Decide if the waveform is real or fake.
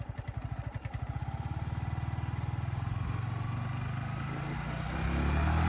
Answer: real